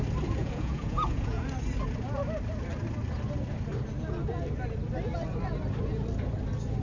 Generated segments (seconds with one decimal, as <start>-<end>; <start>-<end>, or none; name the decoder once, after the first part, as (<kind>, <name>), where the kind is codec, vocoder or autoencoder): 0.4-1.4 (vocoder, Vocos)